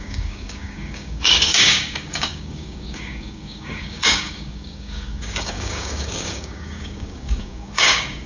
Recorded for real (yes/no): no